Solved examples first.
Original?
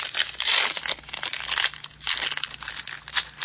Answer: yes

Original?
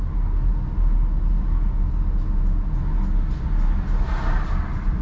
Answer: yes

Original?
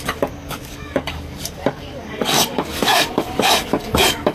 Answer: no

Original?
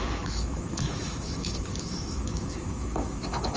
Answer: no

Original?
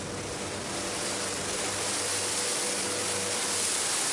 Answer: yes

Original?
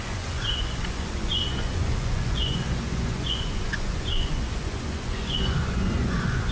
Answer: no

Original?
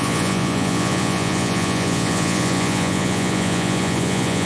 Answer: no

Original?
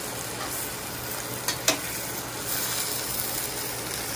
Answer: yes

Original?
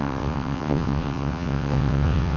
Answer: no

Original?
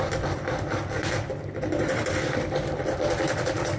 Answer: yes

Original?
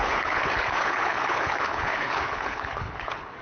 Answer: no